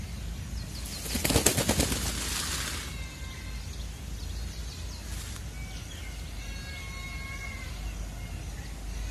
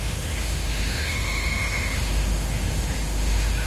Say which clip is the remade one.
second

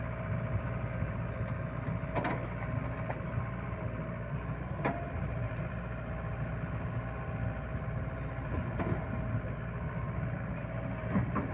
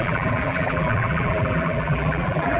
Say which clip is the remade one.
second